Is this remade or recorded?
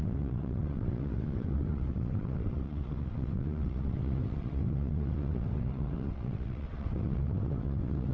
remade